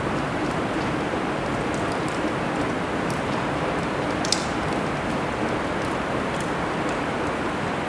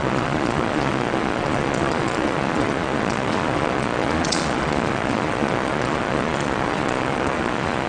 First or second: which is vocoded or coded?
second